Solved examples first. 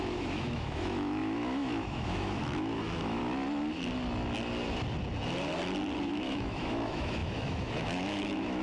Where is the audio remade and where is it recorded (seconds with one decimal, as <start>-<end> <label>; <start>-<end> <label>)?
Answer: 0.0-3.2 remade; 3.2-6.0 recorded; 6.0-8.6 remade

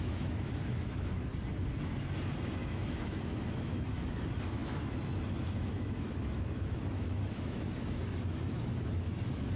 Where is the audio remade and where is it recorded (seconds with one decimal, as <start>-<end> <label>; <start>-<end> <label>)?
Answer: 0.0-1.3 remade; 1.3-2.6 recorded; 2.6-9.6 remade

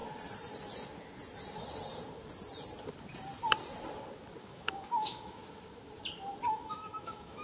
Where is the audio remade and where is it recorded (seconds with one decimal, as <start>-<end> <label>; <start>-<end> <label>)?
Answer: 0.0-4.4 recorded; 4.4-5.4 remade; 5.4-6.5 recorded; 6.5-7.4 remade